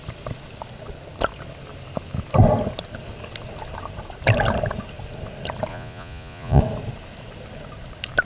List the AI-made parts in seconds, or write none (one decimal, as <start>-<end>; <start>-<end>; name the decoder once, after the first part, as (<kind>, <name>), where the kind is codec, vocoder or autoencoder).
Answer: 5.7-6.6 (vocoder, Vocos)